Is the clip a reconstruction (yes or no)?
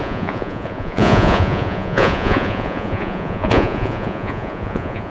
yes